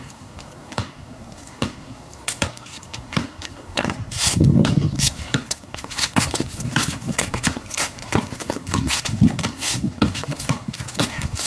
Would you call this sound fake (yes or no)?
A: yes